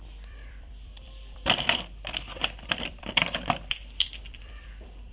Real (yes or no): no